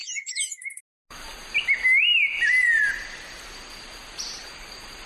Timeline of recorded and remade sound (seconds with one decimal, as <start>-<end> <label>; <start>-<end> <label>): 0.0-0.8 remade; 0.8-5.1 recorded